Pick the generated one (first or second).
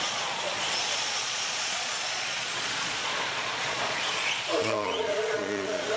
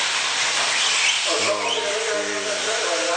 first